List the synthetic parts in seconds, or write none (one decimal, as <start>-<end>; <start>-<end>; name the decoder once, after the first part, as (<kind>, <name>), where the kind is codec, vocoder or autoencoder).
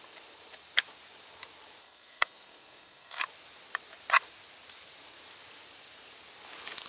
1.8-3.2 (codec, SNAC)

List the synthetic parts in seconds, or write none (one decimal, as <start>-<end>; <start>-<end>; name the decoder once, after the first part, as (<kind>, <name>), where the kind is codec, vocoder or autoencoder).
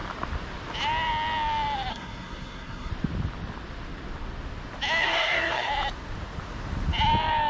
1.9-2.9 (codec, SNAC); 5.0-5.7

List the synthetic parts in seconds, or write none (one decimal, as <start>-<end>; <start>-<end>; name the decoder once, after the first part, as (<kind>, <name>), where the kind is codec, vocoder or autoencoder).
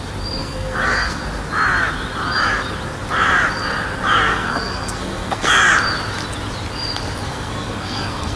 0.4-1.2 (codec, SNAC); 4.3-5.5; 7.2-8.4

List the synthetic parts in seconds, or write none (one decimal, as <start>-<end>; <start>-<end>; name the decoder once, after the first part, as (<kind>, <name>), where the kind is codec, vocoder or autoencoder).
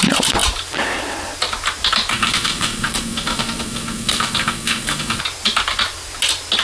2.1-5.2 (codec, SNAC)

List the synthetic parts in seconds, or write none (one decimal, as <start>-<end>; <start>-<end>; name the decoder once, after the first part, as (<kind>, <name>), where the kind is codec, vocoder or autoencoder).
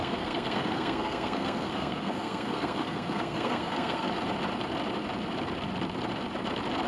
0.0-4.1 (codec, SNAC)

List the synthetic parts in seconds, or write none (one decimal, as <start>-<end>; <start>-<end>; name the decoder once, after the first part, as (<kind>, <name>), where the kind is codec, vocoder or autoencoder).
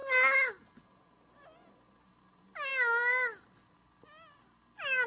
none